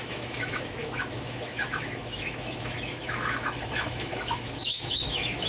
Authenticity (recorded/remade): remade